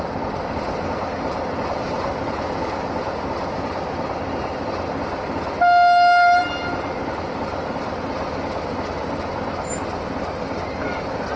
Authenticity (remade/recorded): recorded